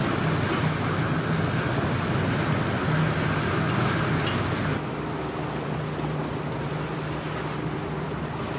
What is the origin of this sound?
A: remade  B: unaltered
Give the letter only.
B